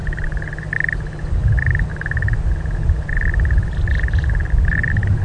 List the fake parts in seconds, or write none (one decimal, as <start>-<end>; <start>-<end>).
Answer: none